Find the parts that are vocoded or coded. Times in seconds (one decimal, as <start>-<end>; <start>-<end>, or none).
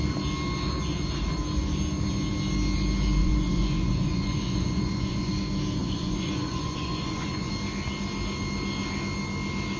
3.2-5.3; 5.8-7.5